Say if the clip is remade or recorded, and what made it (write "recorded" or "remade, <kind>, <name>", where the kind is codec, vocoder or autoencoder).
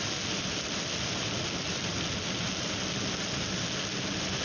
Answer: recorded